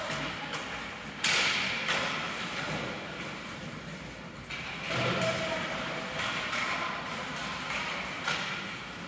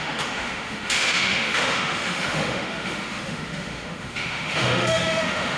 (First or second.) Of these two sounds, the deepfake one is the second